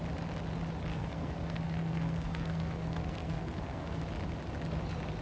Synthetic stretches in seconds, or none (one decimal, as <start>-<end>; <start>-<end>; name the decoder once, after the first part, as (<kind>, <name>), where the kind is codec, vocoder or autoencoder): 0.9-4.0 (codec, SNAC)